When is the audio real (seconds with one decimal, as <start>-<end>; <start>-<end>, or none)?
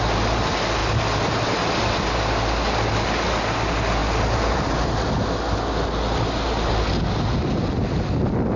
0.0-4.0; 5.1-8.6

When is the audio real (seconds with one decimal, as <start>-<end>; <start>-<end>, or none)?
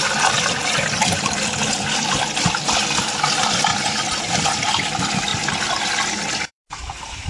1.6-3.0; 3.7-4.2; 5.3-6.2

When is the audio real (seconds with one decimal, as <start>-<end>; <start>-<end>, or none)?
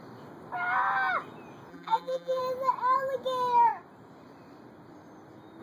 0.0-1.7; 2.4-5.6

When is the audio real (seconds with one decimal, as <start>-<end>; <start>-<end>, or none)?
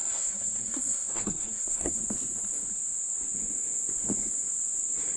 2.0-5.2